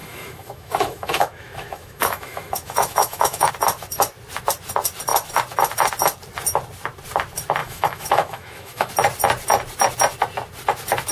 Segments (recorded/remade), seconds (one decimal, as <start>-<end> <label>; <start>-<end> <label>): 0.0-3.5 remade; 3.5-7.6 recorded; 7.6-8.9 remade; 8.9-11.1 recorded